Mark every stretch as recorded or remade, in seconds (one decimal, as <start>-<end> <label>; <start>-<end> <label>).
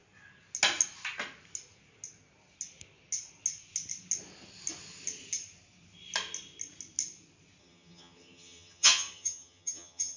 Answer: 0.0-7.6 recorded; 7.6-10.2 remade